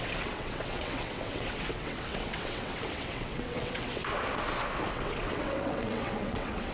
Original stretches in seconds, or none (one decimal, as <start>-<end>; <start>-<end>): 4.0-4.9